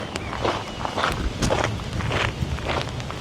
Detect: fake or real real